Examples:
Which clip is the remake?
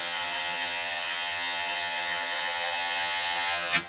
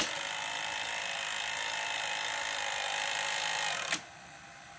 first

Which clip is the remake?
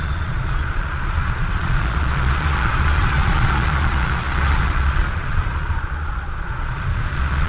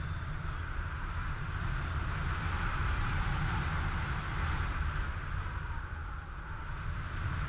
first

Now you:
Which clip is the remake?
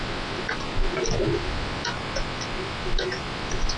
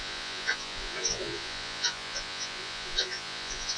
second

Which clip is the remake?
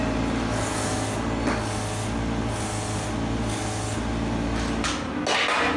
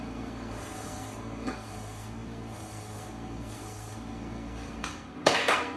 second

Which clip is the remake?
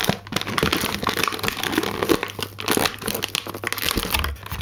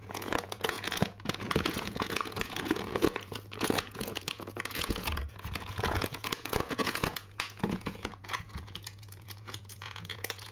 second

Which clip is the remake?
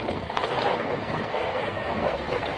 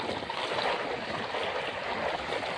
first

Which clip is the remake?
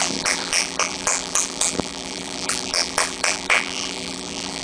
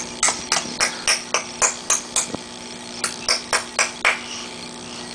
first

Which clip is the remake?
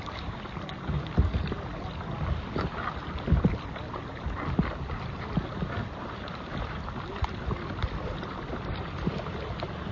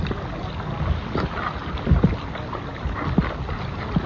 first